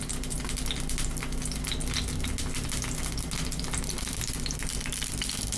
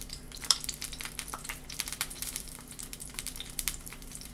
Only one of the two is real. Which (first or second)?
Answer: first